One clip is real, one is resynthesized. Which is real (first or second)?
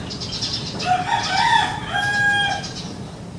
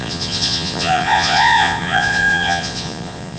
first